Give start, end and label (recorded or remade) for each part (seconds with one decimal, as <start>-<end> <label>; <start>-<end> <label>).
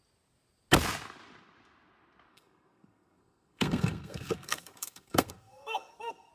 0.0-2.3 recorded; 2.3-6.3 remade